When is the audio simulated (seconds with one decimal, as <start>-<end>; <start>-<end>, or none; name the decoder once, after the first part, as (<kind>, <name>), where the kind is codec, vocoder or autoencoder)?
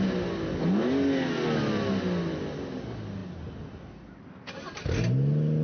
none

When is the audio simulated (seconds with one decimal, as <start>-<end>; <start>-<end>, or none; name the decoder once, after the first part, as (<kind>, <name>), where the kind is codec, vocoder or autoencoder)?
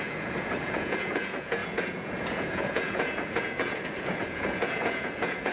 0.0-5.5 (vocoder, Vocos)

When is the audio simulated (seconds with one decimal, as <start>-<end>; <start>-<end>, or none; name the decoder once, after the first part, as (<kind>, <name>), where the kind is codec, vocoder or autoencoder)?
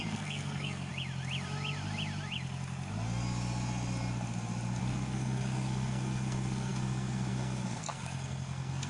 0.0-0.9 (codec, SNAC); 4.8-8.9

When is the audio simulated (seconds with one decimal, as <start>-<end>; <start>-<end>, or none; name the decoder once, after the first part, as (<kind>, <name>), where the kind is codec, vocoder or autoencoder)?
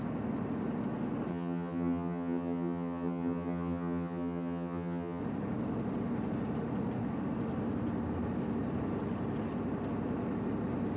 1.3-5.2 (vocoder, HiFi-GAN)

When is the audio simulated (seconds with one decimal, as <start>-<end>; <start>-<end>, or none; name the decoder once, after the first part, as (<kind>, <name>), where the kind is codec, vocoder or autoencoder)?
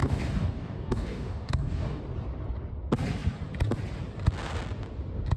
0.0-2.0 (codec, DAC)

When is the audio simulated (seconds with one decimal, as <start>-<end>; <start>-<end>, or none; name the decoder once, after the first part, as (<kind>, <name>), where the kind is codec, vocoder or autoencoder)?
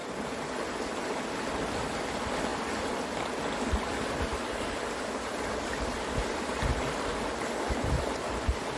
none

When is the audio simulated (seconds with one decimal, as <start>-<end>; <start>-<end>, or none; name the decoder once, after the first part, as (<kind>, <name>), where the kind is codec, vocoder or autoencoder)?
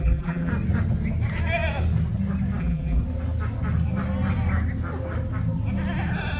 0.0-0.5 (vocoder, BigVGAN v2); 2.6-3.0